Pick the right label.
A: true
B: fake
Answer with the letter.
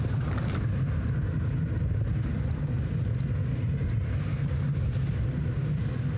A